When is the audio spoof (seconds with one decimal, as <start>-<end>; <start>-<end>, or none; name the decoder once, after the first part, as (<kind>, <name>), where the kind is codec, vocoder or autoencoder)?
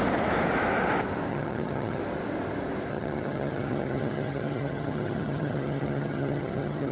1.3-2.0 (vocoder, HiFi-GAN); 2.9-6.9